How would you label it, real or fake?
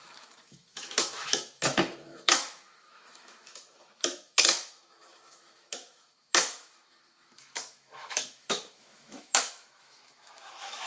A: fake